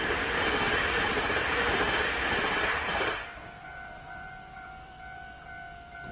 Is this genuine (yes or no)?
no